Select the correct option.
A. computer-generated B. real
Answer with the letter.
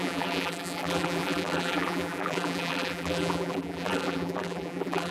A